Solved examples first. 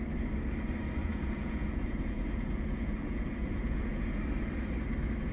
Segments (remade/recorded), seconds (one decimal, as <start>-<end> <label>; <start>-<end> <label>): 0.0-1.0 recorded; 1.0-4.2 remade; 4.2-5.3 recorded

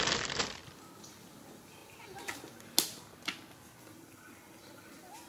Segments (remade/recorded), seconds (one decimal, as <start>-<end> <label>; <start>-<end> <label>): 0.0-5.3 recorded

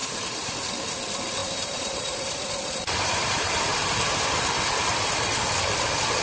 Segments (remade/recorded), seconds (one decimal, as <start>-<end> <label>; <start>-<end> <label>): 0.0-0.5 remade; 0.5-1.4 recorded; 1.4-4.5 remade; 4.5-6.2 recorded